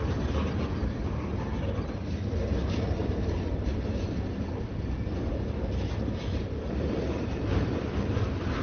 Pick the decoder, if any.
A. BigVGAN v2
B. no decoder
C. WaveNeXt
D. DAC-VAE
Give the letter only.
A